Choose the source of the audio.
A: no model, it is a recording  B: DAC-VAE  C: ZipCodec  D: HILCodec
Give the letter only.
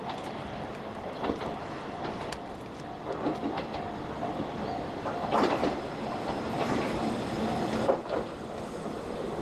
A